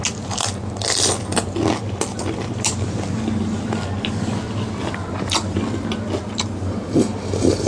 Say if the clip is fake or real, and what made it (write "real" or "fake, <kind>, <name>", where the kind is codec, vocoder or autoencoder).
real